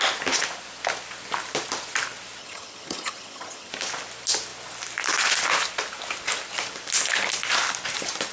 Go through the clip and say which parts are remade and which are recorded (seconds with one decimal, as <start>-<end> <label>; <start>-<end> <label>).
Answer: 0.0-2.4 recorded; 2.4-3.7 remade; 3.7-8.3 recorded